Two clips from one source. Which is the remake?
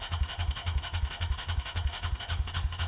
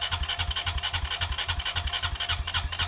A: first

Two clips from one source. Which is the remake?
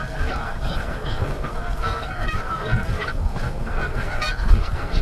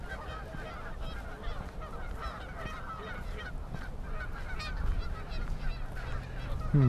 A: first